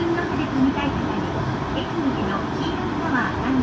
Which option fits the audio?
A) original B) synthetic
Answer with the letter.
A